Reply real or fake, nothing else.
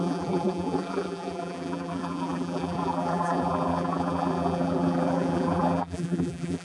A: fake